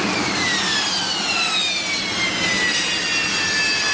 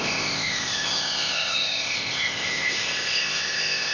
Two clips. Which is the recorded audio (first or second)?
first